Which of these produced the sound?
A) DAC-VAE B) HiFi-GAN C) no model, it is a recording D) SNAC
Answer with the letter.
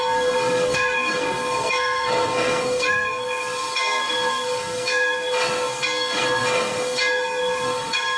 D